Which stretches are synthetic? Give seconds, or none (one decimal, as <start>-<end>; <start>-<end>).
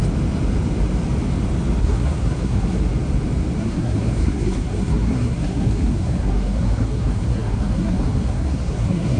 1.8-2.9; 3.6-9.2